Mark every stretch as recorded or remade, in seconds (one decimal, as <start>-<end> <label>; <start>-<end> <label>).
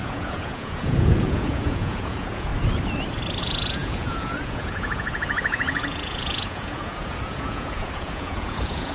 0.0-2.5 remade; 2.5-3.4 recorded; 3.4-8.9 remade